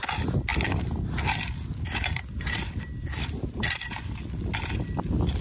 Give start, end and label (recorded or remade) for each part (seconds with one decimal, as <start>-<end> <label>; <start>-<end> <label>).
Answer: 0.0-5.4 recorded